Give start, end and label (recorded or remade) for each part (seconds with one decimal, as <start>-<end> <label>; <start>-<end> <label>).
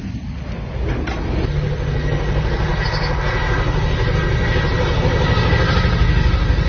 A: 0.0-6.7 recorded